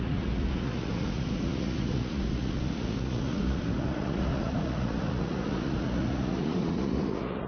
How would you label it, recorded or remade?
remade